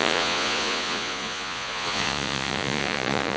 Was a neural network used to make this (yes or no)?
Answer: yes